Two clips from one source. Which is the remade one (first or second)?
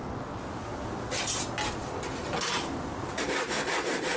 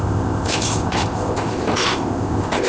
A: second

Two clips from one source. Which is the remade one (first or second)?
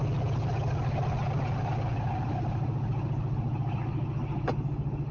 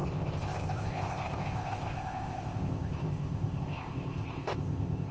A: second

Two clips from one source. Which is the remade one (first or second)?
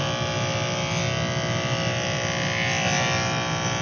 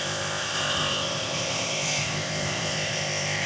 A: second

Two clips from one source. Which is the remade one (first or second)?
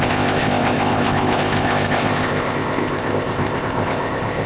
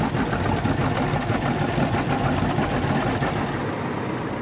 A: first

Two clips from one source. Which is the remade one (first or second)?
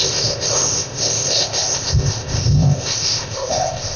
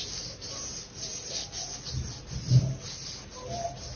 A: first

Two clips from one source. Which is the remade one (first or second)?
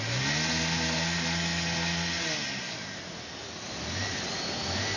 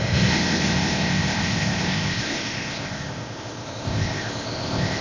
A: second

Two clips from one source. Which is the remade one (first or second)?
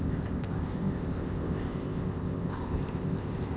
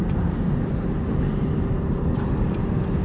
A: first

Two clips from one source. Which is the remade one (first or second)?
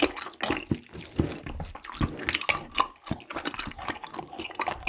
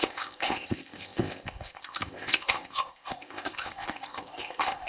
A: second